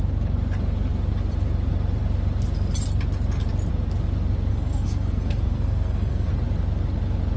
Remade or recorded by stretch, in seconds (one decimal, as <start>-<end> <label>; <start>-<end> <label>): 0.0-4.5 recorded; 4.5-6.3 remade; 6.3-7.4 recorded